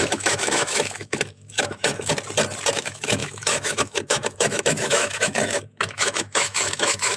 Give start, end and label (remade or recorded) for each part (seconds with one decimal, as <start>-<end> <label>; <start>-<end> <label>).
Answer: 0.0-2.1 remade; 2.1-2.7 recorded; 2.7-7.2 remade